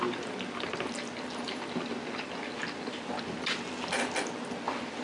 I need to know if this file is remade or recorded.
recorded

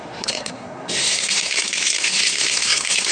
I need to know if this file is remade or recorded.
remade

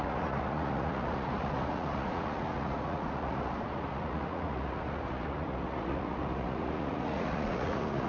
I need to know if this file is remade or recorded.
remade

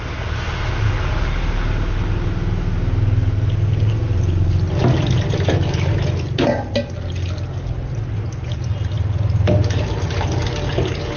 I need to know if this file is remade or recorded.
recorded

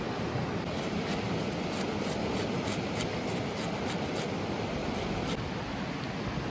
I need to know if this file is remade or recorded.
recorded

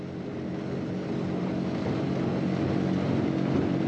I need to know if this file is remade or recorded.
recorded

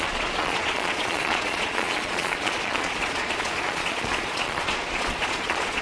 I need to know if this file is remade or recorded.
remade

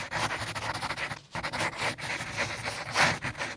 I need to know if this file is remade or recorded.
recorded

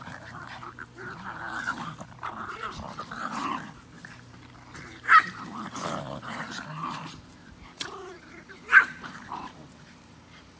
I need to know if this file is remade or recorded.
remade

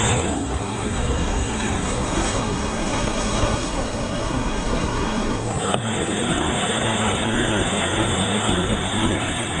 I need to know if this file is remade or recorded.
remade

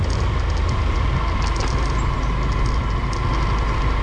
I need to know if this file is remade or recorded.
recorded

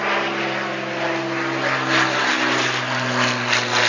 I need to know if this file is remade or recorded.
recorded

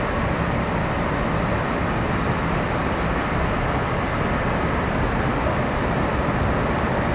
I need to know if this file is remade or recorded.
recorded